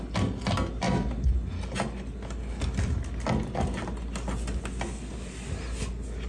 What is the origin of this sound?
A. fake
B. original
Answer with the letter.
B